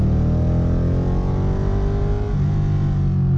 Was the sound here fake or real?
real